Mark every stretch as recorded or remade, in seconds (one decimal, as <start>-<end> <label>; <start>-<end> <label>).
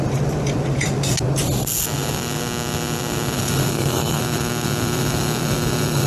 0.0-3.7 recorded; 3.7-4.2 remade; 4.2-6.1 recorded